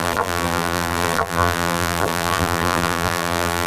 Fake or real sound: fake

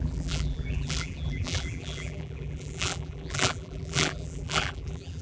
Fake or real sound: fake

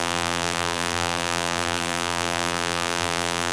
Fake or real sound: fake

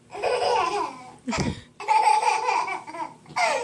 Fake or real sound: fake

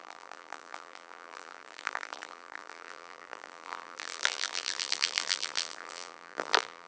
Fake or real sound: fake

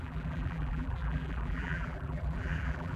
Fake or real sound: fake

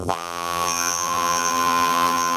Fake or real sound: fake